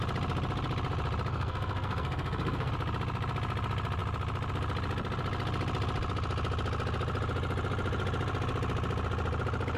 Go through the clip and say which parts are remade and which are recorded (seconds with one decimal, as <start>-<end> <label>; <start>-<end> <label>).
0.0-1.3 recorded; 1.3-2.7 remade; 2.7-9.8 recorded